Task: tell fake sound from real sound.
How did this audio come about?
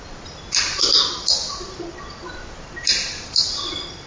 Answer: real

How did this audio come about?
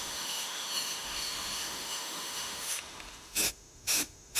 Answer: fake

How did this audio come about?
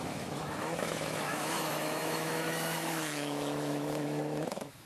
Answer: fake